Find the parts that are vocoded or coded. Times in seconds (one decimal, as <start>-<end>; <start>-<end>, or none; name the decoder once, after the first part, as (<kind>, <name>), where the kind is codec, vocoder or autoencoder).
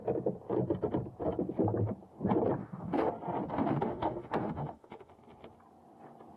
2.6-3.1 (autoencoder, DAC-VAE); 3.5-5.1